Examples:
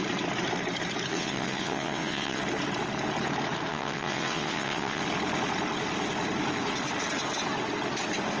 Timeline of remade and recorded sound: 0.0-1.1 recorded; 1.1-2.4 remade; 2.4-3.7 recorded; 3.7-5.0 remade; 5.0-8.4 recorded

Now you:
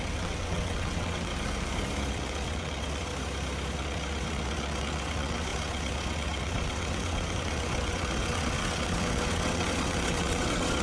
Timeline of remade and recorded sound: 0.0-1.3 remade; 1.3-2.1 recorded; 2.1-3.1 remade; 3.1-3.7 recorded; 3.7-10.8 remade

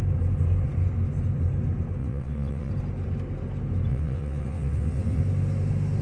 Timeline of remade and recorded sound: 0.0-2.0 recorded; 2.0-2.7 remade; 2.7-3.9 recorded; 3.9-5.2 remade; 5.2-6.0 recorded